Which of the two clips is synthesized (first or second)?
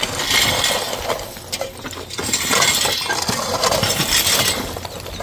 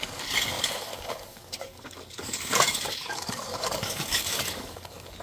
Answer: second